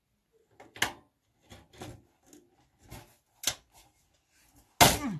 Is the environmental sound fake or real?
real